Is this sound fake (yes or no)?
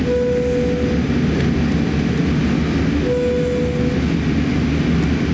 no